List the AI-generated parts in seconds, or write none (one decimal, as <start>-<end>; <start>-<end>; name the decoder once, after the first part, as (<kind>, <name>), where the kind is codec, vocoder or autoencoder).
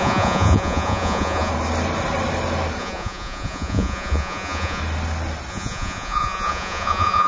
0.0-1.5 (vocoder, Vocos); 2.8-4.8; 5.5-7.3